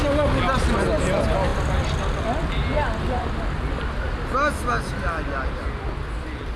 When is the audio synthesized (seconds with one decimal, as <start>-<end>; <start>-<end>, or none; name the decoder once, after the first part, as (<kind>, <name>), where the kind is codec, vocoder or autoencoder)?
none